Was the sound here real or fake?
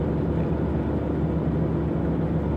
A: real